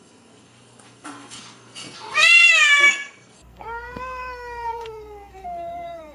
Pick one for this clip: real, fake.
fake